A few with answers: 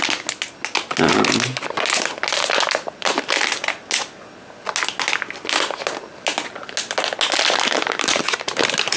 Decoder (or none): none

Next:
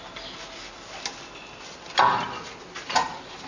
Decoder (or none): none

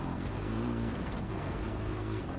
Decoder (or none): codec, SNAC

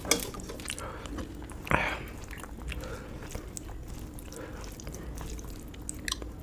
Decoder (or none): none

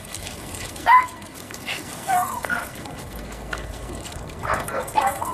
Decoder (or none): codec, SNAC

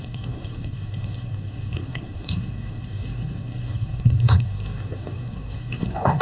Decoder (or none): codec, SNAC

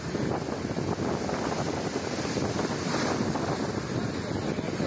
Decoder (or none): none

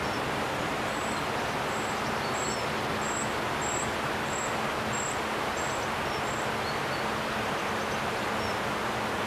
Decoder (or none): none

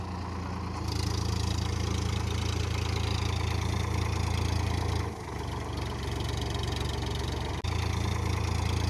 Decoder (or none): none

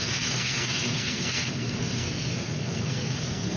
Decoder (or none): codec, SNAC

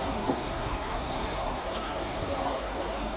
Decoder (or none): codec, SNAC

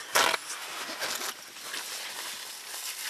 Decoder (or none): none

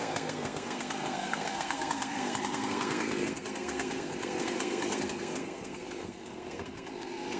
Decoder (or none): codec, SNAC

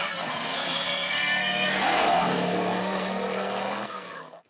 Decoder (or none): codec, SNAC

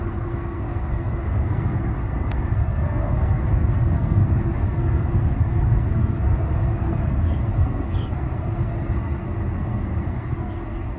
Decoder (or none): codec, SNAC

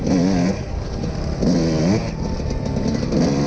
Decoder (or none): none